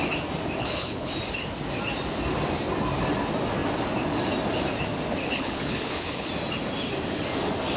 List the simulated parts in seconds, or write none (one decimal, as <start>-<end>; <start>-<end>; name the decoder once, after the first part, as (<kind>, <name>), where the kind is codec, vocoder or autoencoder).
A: 0.6-1.1 (codec, HILCodec); 5.2-6.3